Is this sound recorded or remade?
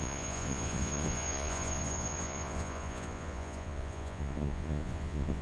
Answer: remade